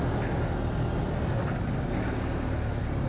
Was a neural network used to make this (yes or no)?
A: no